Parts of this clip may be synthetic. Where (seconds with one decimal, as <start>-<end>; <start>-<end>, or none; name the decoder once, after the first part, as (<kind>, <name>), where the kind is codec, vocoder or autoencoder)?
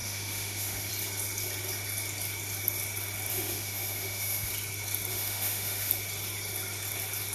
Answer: 0.0-0.9 (autoencoder, DAC-VAE); 3.3-4.5; 5.1-5.9